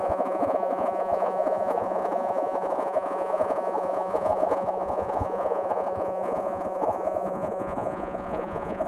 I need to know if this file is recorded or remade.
remade